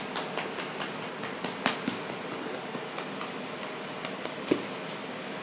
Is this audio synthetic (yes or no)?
no